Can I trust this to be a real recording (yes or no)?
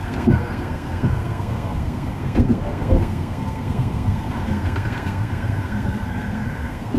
no